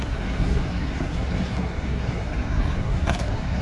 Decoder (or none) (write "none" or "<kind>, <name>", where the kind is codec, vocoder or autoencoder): codec, SNAC